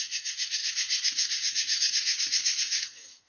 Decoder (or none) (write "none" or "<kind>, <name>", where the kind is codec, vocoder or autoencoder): codec, SNAC